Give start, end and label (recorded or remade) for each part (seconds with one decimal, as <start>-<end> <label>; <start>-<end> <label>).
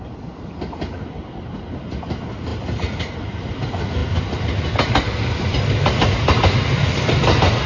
0.0-7.7 recorded